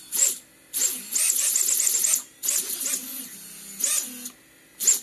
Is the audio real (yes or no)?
yes